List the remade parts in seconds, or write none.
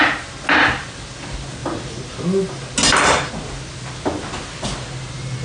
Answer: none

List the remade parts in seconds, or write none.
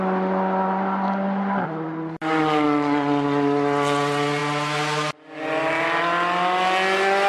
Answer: none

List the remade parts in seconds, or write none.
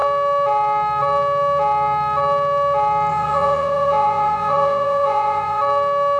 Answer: 3.1-5.6 (vocoder, Vocos)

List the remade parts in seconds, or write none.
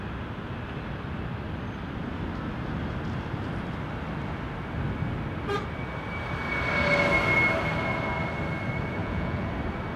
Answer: 9.0-9.5 (vocoder, Vocos)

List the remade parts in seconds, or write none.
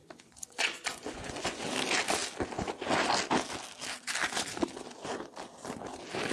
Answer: 0.0-1.6 (vocoder, Vocos)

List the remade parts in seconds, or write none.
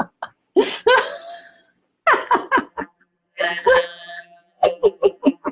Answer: 2.7-5.5 (vocoder, BigVGAN v2)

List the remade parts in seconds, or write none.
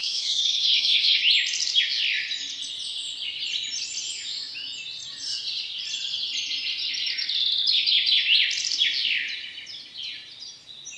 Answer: 0.0-1.2 (codec, SNAC)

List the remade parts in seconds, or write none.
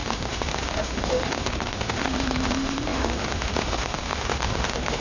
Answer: 0.0-5.0 (autoencoder, DAC-VAE)